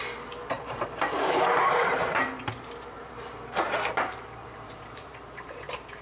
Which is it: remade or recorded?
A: remade